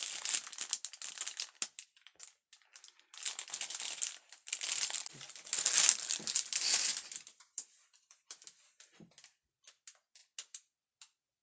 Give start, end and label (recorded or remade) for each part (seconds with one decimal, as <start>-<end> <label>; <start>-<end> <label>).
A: 0.0-11.4 recorded